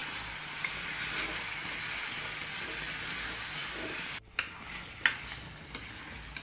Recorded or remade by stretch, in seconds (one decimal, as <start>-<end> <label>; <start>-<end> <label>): 0.0-6.4 recorded